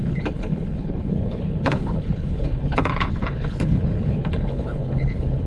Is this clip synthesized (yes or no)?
yes